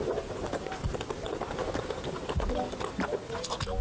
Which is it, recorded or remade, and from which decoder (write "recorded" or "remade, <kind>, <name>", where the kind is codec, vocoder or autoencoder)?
recorded